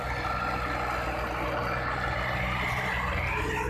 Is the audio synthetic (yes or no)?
no